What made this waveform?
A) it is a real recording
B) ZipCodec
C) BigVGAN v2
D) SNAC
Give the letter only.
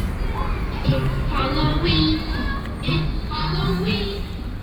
A